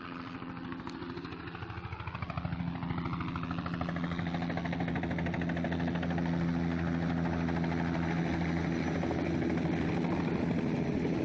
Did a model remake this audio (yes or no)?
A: no